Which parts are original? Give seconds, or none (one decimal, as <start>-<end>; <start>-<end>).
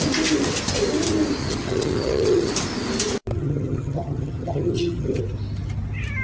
0.0-1.4; 2.5-3.3; 5.2-6.2